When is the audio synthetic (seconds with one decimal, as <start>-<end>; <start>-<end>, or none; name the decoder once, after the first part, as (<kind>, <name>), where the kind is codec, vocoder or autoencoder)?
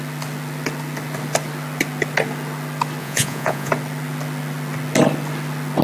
3.0-3.7 (vocoder, Vocos)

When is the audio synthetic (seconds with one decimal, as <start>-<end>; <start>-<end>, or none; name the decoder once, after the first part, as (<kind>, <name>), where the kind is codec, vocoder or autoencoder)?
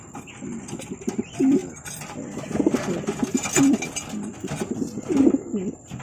none